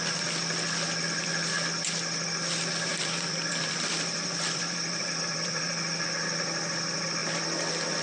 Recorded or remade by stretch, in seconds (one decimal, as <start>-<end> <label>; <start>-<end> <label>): 0.0-2.9 recorded; 2.9-5.7 remade; 5.7-7.2 recorded; 7.2-8.0 remade